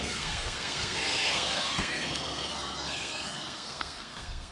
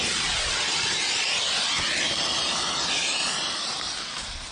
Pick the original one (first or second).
second